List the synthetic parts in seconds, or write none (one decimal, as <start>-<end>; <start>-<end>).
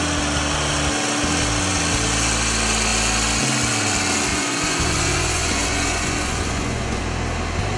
4.3-7.0